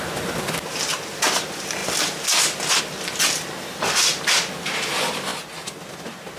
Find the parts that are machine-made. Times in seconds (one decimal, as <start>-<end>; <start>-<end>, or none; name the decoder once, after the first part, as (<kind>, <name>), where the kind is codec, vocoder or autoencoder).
none